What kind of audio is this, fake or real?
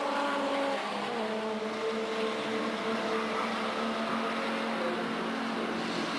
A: real